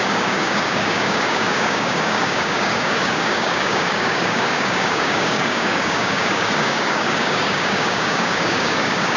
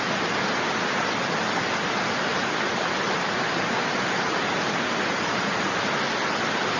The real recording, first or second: second